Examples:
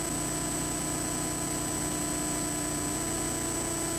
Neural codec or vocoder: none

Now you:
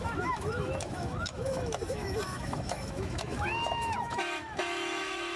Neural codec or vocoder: autoencoder, DAC-VAE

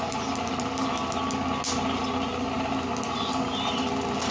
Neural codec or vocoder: none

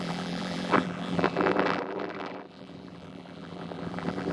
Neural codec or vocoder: vocoder, BigVGAN v2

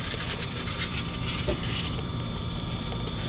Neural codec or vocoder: vocoder, BigVGAN v2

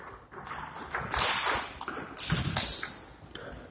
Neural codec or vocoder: none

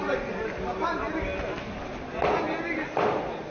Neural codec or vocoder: none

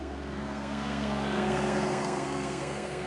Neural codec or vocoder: codec, SNAC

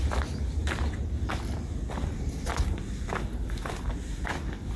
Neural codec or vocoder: none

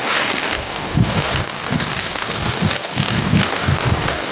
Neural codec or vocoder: codec, DAC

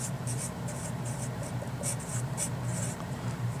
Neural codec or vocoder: vocoder, BigVGAN v2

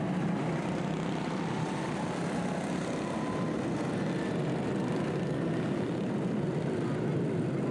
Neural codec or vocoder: none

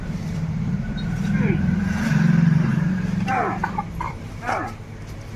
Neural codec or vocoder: vocoder, BigVGAN v2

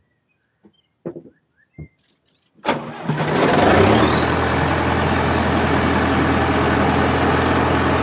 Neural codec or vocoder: none